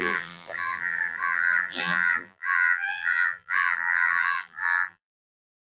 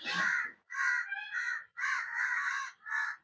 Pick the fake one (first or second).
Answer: first